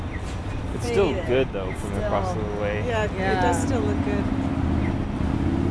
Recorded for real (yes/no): yes